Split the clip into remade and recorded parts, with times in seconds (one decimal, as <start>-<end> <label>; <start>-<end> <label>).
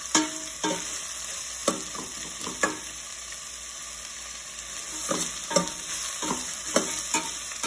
0.0-7.7 recorded